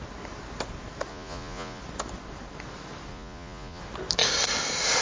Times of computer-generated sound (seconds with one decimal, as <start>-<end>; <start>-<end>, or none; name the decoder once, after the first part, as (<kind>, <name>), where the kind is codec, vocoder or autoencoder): 1.1-1.8 (vocoder, Vocos); 3.1-3.8